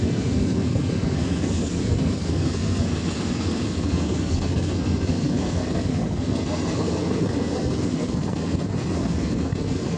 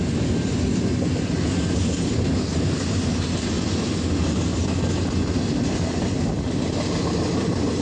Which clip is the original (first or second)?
second